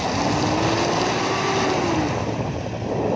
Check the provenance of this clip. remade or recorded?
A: recorded